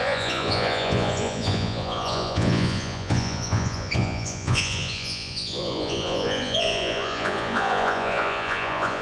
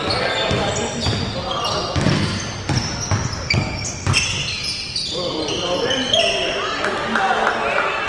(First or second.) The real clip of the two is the second